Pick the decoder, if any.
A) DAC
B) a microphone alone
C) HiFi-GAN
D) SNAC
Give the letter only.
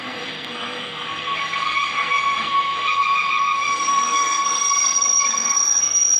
D